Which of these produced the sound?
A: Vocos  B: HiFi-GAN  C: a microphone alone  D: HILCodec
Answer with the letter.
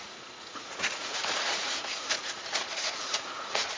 A